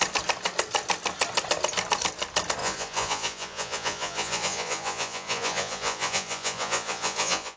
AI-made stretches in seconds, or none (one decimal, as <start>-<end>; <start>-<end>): 2.6-7.6